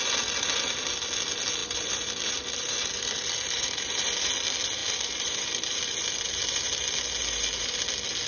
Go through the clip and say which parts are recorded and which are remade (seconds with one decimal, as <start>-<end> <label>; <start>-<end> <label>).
0.0-1.6 recorded; 1.6-4.3 remade; 4.3-4.8 recorded; 4.8-7.8 remade; 7.8-8.3 recorded